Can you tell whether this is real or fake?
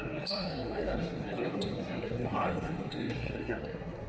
fake